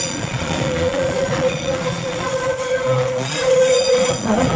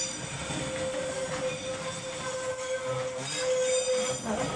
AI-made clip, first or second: first